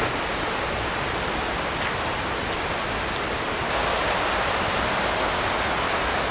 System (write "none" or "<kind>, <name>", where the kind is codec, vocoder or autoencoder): none